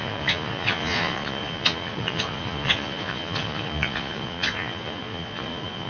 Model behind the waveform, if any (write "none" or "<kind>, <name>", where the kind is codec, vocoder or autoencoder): vocoder, Vocos